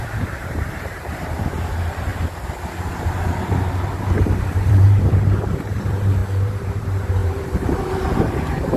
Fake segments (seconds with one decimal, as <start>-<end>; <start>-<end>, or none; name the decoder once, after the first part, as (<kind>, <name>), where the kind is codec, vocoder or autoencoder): 0.0-2.1 (vocoder, BigVGAN v2); 4.5-8.8